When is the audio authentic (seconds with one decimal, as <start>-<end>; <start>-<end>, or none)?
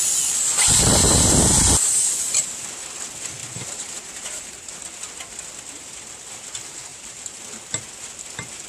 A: 0.0-3.4; 4.7-6.9; 7.4-8.7